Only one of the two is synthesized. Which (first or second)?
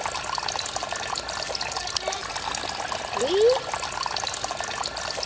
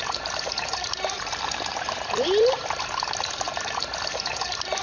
second